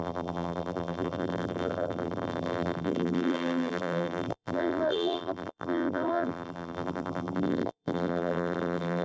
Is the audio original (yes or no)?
no